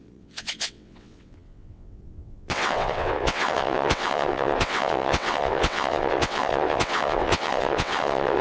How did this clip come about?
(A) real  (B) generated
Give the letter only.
B